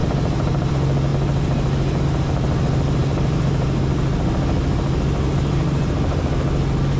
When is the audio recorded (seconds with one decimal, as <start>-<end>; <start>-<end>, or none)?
0.7-3.0; 4.1-5.3; 6.3-7.0